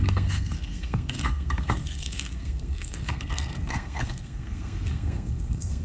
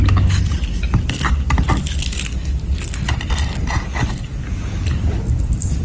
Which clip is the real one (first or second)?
second